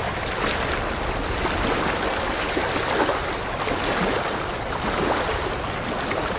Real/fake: real